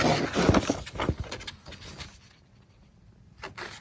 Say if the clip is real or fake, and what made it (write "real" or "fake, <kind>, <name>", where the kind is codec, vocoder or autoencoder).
real